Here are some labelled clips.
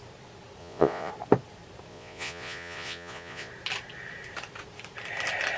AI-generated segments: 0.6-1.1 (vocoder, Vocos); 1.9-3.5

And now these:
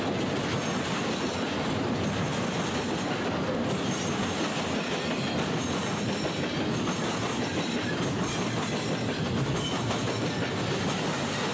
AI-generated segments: none

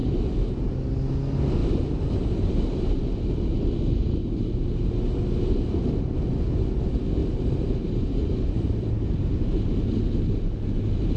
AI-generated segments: 0.0-0.6 (vocoder, BigVGAN v2); 1.6-3.0; 7.2-9.3